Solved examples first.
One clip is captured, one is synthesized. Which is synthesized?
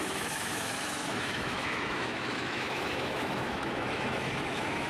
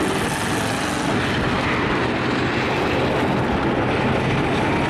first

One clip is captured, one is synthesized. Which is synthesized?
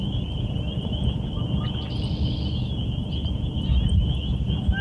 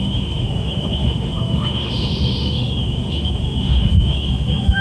second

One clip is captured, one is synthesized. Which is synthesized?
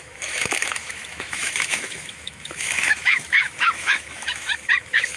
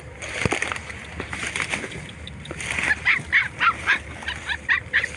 first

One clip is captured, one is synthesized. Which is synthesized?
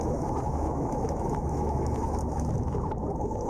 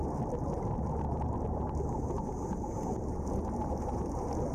first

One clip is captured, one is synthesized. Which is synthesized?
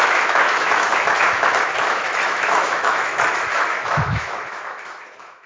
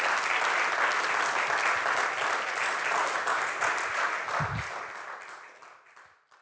first